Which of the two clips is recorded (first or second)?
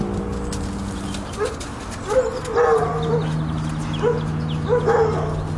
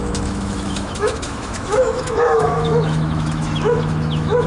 first